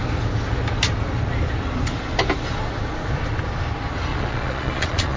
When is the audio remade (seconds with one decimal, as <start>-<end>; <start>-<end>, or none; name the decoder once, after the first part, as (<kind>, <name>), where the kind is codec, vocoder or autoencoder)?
4.1-5.2 (vocoder, Vocos)

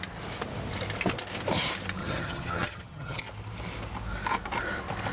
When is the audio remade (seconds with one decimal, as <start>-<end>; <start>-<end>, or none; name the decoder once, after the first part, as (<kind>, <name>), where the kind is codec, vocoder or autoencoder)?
2.0-3.2 (vocoder, HiFi-GAN)

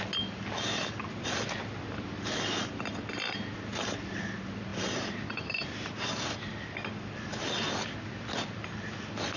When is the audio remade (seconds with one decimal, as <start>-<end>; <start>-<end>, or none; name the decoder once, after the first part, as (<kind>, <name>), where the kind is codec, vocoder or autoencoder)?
4.7-9.4 (vocoder, BigVGAN v2)

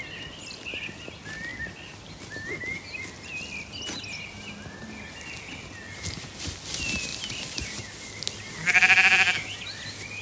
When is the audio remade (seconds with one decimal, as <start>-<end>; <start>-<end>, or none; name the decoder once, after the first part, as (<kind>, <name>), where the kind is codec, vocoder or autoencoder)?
none

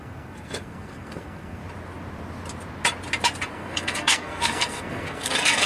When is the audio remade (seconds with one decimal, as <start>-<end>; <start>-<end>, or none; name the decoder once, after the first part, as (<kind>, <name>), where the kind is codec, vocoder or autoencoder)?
0.0-1.6 (codec, SNAC); 3.5-5.7

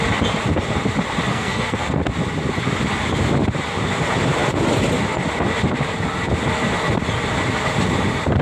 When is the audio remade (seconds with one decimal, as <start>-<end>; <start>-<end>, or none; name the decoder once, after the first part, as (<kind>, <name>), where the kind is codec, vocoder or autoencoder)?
1.3-2.0 (codec, SNAC)

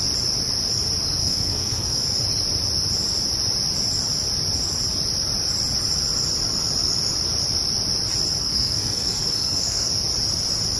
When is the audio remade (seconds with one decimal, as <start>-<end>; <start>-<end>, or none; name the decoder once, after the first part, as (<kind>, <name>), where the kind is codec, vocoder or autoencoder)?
1.2-2.0 (codec, SNAC); 8.4-9.9